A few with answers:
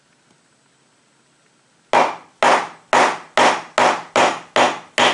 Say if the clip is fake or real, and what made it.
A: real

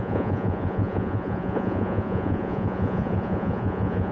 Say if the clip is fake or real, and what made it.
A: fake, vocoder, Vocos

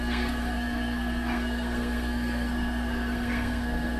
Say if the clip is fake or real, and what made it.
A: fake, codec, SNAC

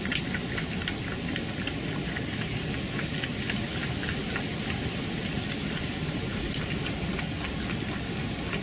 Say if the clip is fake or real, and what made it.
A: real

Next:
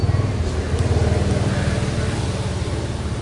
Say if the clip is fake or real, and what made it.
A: real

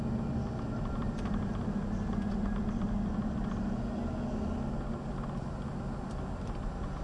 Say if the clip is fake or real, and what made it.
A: real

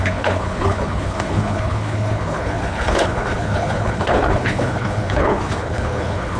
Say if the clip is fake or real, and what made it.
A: fake, codec, HILCodec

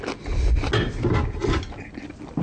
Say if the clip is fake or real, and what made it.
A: real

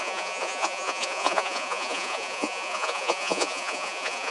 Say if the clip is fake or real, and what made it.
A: fake, vocoder, Vocos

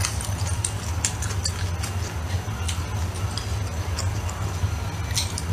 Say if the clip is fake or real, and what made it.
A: real